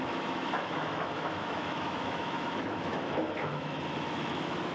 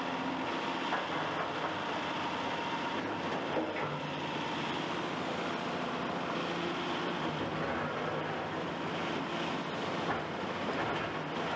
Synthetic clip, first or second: first